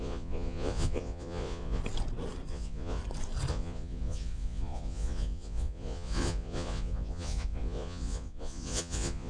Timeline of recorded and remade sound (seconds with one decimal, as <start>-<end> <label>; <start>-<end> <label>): 0.0-1.8 remade; 1.8-2.5 recorded; 2.5-3.0 remade; 3.0-3.5 recorded; 3.5-9.3 remade